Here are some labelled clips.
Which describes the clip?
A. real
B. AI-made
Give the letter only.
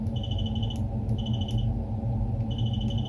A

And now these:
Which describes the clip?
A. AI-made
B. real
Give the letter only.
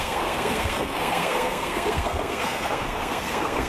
A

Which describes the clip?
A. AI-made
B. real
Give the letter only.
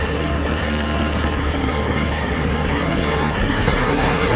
A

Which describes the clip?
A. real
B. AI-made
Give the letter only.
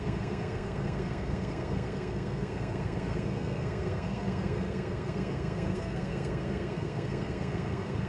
B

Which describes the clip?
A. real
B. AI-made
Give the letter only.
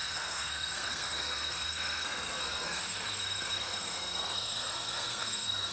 B